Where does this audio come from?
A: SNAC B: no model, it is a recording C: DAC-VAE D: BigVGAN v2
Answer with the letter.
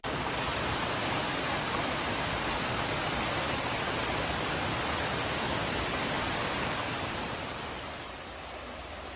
B